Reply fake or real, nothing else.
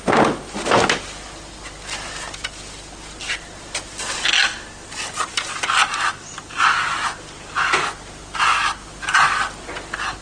real